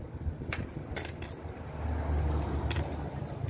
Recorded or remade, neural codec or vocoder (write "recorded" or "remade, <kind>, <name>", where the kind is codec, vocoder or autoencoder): recorded